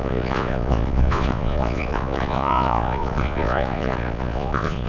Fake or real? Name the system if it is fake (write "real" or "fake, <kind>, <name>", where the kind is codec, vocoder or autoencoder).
fake, vocoder, Vocos